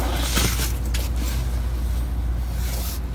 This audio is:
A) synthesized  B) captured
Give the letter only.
B